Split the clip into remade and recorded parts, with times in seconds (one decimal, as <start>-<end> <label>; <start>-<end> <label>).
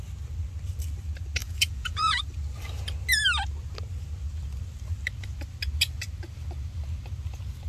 0.0-1.4 recorded; 1.4-2.2 remade; 2.2-7.7 recorded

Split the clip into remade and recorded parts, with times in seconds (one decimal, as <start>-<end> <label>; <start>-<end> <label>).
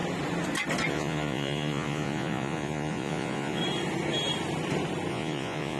0.0-0.9 recorded; 0.9-3.6 remade; 3.6-5.1 recorded; 5.1-5.8 remade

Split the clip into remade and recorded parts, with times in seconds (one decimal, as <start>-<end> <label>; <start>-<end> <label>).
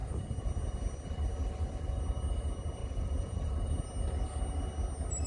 0.0-2.8 recorded; 2.8-3.7 remade; 3.7-5.3 recorded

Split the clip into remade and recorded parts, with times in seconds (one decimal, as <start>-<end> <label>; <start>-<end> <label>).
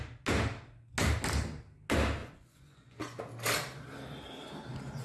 0.0-2.2 recorded; 2.2-3.2 remade; 3.2-5.0 recorded